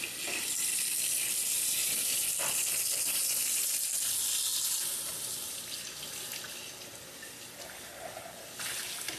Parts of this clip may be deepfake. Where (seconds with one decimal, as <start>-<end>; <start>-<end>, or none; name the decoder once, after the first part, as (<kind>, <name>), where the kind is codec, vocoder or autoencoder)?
none